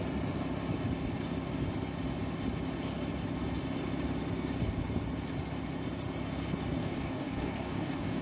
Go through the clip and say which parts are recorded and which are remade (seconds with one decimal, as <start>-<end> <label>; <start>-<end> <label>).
0.0-6.8 recorded; 6.8-8.2 remade